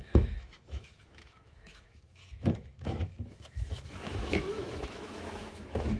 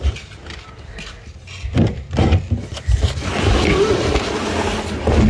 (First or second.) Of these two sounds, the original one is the second